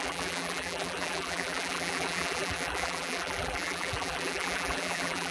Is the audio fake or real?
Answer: fake